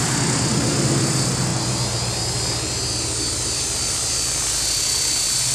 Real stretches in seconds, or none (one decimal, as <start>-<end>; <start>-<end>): 0.0-5.5